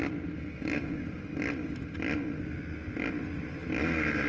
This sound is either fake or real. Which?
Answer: real